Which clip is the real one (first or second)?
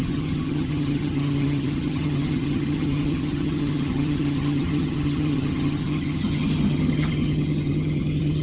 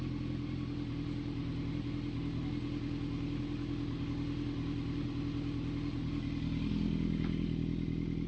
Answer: second